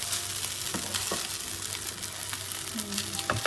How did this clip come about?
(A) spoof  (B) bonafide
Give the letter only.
B